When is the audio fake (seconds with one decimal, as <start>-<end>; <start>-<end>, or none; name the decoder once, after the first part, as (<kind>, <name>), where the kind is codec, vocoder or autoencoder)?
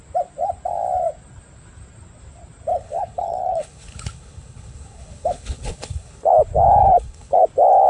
2.7-6.2 (codec, HILCodec); 6.8-7.4